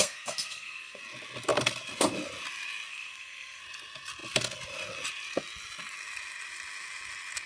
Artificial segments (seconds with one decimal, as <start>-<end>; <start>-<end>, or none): 0.0-1.0; 2.9-3.6